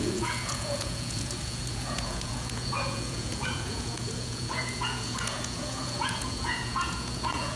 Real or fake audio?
fake